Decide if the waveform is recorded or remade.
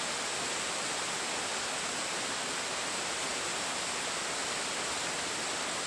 recorded